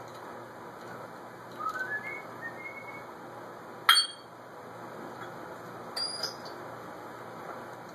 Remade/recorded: recorded